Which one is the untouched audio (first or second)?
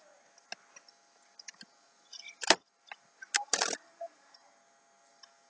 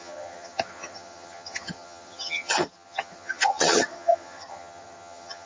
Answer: first